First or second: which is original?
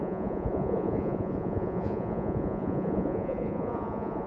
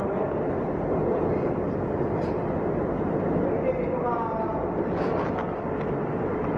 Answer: second